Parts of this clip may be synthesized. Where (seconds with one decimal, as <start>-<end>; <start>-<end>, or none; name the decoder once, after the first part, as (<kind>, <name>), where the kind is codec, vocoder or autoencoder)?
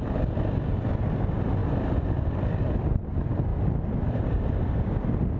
1.6-3.1 (vocoder, BigVGAN v2); 3.5-4.5